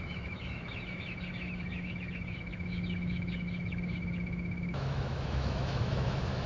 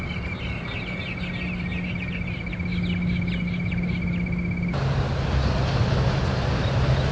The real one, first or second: second